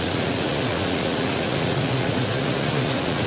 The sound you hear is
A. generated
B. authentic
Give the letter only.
A